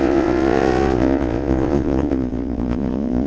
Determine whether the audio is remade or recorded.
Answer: remade